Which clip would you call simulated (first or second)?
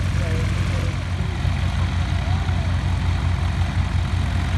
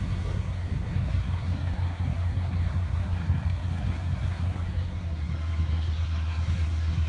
second